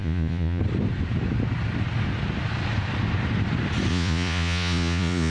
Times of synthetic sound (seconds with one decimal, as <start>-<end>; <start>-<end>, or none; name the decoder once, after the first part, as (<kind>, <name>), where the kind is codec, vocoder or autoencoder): 0.0-0.6 (vocoder, Vocos); 3.9-5.3